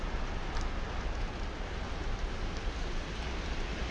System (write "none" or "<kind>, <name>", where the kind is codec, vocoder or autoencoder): none